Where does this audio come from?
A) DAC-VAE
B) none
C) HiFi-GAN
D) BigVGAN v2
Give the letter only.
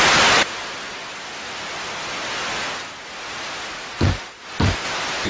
B